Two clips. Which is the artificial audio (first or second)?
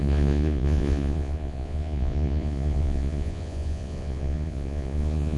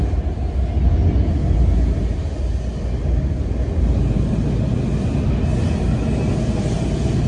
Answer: first